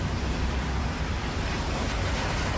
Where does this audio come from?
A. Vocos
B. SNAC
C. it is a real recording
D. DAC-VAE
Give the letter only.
C